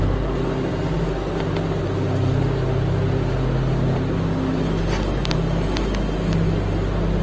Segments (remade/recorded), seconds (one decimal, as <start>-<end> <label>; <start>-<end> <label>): 0.0-7.2 recorded